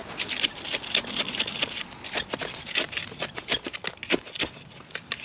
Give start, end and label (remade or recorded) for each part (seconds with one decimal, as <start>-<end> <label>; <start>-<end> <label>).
0.0-5.2 recorded